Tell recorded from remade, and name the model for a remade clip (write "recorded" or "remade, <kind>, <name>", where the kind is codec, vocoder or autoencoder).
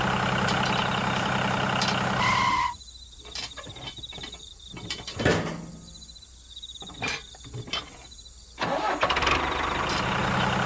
recorded